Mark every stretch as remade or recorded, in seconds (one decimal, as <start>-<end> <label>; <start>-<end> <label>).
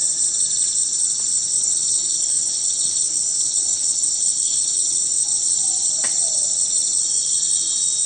0.0-1.5 recorded; 1.5-5.3 remade; 5.3-8.1 recorded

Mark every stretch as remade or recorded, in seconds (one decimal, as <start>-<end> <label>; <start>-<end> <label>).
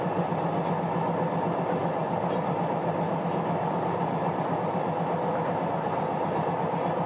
0.0-7.1 recorded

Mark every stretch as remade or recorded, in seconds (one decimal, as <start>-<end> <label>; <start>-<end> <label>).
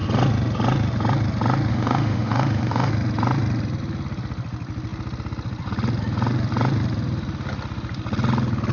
0.0-1.7 recorded; 1.7-2.9 remade; 2.9-8.7 recorded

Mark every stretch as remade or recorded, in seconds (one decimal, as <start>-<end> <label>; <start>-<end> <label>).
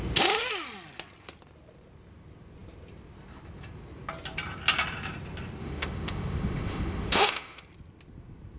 0.0-5.6 recorded; 5.6-7.6 remade; 7.6-8.6 recorded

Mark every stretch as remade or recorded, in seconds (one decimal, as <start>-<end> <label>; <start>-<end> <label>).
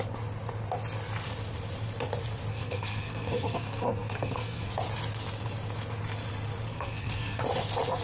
0.0-2.5 recorded; 2.5-4.7 remade; 4.7-6.7 recorded; 6.7-7.4 remade; 7.4-8.0 recorded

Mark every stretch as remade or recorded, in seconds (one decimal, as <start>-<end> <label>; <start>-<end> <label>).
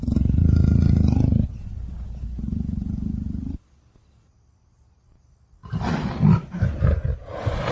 0.0-7.7 recorded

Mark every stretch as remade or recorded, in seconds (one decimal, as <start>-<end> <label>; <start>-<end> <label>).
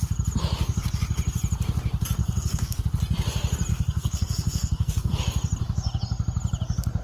0.0-2.2 recorded; 2.2-2.8 remade; 2.8-3.7 recorded; 3.7-5.2 remade; 5.2-7.0 recorded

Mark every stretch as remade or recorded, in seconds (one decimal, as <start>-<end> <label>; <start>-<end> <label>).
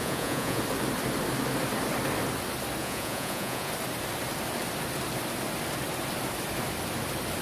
0.0-0.6 remade; 0.6-2.8 recorded; 2.8-3.7 remade; 3.7-7.4 recorded